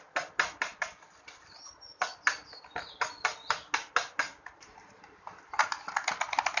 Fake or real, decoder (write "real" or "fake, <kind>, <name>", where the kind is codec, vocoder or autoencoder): real